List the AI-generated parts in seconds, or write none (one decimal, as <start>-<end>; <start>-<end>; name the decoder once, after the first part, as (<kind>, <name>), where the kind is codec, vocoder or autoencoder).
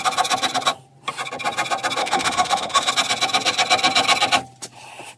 2.0-2.9 (autoencoder, DAC-VAE)